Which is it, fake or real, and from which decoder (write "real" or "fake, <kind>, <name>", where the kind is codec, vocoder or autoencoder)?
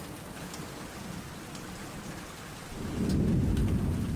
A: real